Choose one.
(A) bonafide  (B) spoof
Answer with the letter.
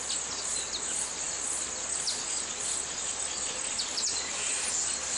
A